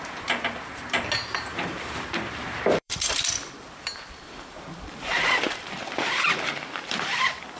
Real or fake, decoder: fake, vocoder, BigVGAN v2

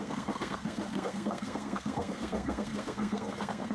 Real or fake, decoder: fake, codec, SNAC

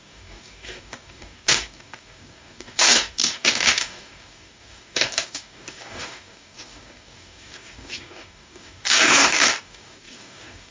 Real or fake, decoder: fake, codec, DAC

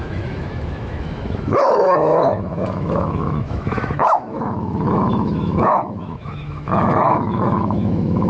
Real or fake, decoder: fake, autoencoder, DAC-VAE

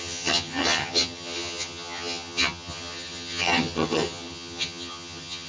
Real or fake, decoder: fake, vocoder, HiFi-GAN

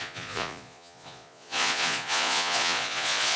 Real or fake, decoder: fake, vocoder, Vocos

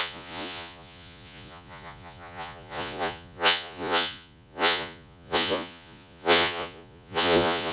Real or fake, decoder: fake, vocoder, Vocos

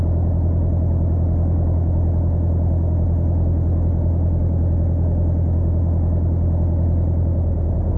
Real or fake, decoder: real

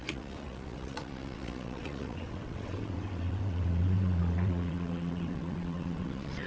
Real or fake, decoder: fake, vocoder, WaveNeXt